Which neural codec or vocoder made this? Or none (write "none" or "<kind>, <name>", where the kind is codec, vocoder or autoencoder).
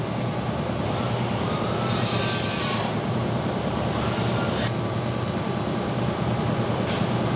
none